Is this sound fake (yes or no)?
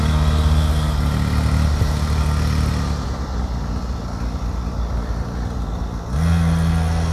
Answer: no